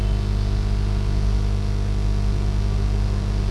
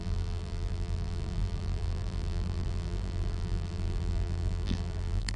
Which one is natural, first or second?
first